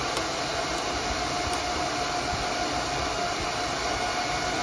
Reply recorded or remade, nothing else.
recorded